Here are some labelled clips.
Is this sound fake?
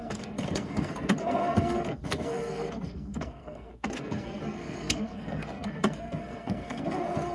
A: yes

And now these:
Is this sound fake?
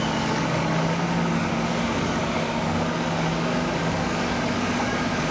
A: yes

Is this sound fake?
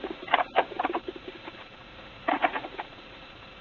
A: yes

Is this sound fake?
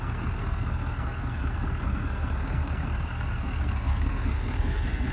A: yes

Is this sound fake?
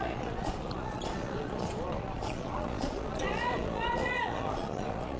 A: yes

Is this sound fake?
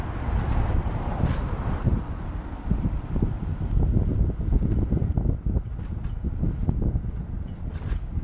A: no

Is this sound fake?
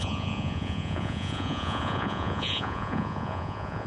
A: yes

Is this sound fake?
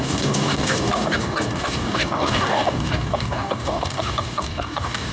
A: yes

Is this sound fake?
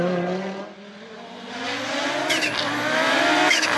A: no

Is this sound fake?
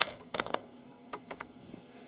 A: yes